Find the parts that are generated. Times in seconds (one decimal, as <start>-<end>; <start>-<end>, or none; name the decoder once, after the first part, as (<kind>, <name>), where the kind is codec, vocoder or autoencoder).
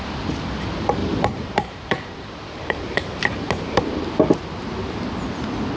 1.0-3.8 (vocoder, BigVGAN v2)